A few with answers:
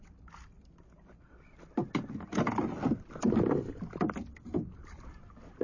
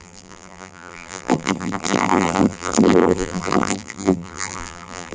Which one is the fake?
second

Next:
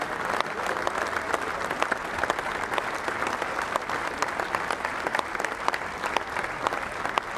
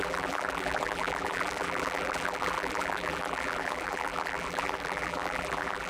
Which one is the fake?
second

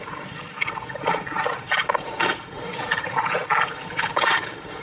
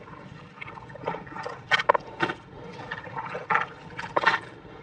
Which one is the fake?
first